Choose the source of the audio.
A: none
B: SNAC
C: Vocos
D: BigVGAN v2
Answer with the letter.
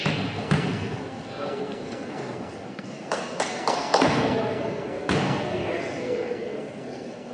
B